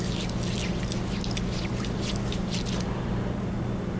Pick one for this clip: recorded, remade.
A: recorded